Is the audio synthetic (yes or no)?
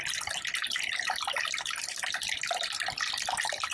no